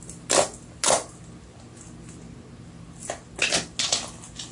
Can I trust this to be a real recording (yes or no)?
yes